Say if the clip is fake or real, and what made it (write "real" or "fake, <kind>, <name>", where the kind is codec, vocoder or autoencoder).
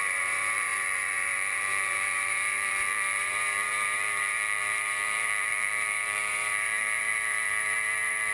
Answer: fake, vocoder, BigVGAN v2